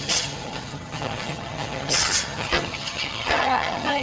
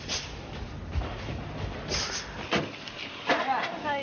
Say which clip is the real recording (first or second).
second